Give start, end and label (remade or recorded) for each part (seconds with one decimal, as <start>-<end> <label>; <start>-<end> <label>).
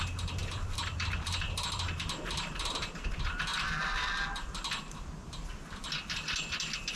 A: 0.0-0.4 recorded; 0.4-3.1 remade; 3.1-7.0 recorded